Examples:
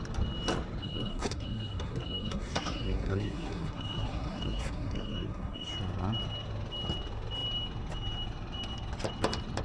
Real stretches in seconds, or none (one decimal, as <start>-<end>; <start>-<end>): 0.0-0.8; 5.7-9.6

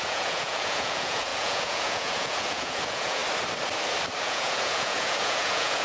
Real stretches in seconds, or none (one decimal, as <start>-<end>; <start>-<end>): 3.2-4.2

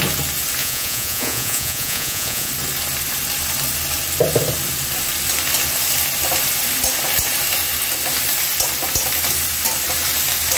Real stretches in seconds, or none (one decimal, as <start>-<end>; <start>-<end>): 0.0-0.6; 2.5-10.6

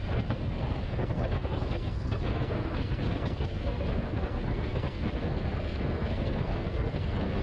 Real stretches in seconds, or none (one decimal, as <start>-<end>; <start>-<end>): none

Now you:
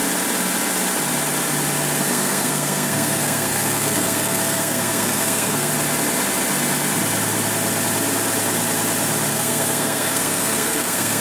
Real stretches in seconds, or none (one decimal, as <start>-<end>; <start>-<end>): 0.0-2.1; 5.7-9.3

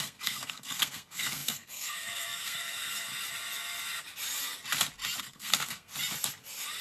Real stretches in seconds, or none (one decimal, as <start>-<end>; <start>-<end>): 3.1-5.2; 5.9-6.8